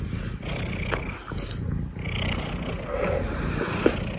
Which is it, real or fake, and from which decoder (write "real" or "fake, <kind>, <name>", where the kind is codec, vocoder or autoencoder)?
real